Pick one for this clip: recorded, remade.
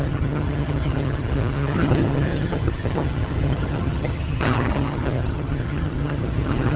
remade